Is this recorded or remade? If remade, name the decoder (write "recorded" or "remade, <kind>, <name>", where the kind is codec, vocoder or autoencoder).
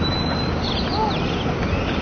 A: recorded